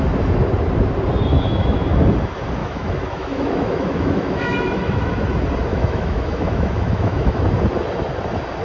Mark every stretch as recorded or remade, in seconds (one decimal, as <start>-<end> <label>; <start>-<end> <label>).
0.0-1.3 recorded; 1.3-2.0 remade; 2.0-2.6 recorded; 2.6-5.1 remade; 5.1-5.7 recorded; 5.7-7.4 remade; 7.4-8.6 recorded